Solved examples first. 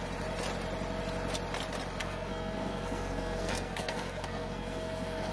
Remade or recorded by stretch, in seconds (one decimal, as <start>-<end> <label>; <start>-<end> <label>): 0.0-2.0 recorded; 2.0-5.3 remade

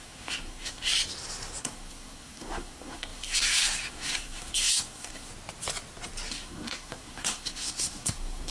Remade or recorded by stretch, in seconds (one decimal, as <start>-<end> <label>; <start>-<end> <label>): 0.0-0.9 remade; 0.9-1.6 recorded; 1.6-5.3 remade; 5.3-6.3 recorded; 6.3-8.5 remade

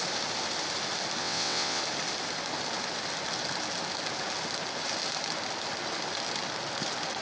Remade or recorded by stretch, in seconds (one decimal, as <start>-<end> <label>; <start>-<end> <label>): 0.0-1.2 recorded; 1.2-1.8 remade; 1.8-7.2 recorded

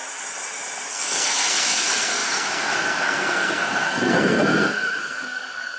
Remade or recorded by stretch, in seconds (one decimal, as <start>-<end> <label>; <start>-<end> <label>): 0.0-0.9 recorded; 0.9-5.8 remade